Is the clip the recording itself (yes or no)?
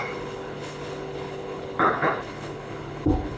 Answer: no